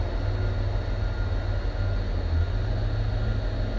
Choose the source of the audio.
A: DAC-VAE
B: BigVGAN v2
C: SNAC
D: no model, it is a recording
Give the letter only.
D